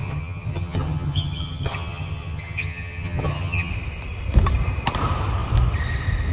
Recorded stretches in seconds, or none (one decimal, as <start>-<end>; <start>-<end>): 3.7-6.3